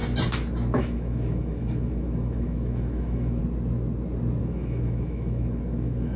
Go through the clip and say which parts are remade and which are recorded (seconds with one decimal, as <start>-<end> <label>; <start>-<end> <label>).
0.0-0.8 recorded; 0.8-3.4 remade; 3.4-4.4 recorded; 4.4-6.2 remade